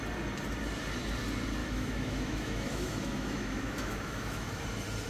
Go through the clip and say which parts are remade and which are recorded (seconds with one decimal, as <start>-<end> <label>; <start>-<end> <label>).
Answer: 0.0-1.6 recorded; 1.6-4.6 remade; 4.6-5.1 recorded